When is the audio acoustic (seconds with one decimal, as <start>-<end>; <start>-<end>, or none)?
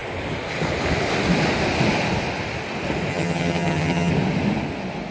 0.0-3.1; 4.1-5.1